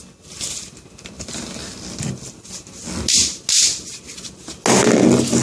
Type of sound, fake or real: real